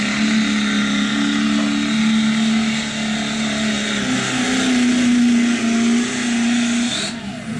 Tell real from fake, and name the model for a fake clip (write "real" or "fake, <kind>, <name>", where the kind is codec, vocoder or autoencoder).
real